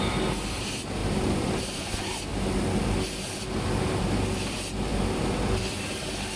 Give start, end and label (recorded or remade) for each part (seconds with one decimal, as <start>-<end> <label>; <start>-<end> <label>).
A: 0.0-1.0 recorded; 1.0-1.6 remade; 1.6-6.4 recorded